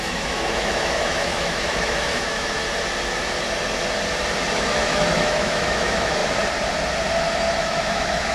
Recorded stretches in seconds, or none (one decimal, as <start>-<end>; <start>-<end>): 2.6-4.5; 6.2-7.6